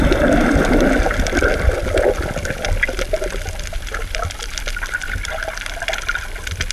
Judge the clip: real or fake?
real